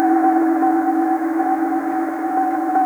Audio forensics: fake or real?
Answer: fake